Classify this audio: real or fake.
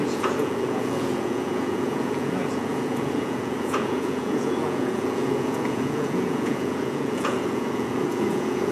fake